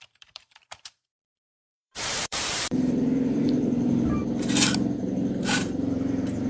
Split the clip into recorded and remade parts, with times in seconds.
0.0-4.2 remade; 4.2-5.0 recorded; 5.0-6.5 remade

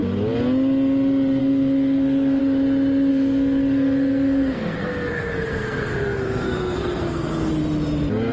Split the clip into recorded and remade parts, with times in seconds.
0.0-1.4 recorded; 1.4-2.4 remade; 2.4-3.1 recorded; 3.1-7.5 remade; 7.5-8.3 recorded

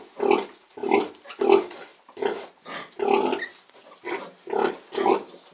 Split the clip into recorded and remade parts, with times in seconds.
0.0-5.5 recorded

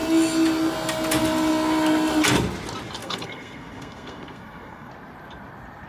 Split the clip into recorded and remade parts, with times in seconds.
0.0-3.0 recorded; 3.0-4.9 remade; 4.9-5.9 recorded

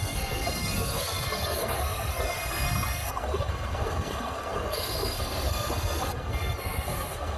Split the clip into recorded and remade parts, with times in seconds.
0.0-7.4 remade